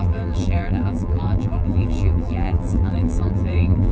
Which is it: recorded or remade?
remade